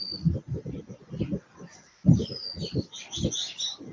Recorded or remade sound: recorded